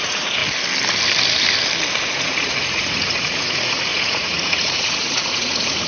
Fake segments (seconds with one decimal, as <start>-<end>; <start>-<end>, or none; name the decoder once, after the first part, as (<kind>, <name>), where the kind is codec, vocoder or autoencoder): 0.0-0.4 (vocoder, Vocos); 2.0-5.9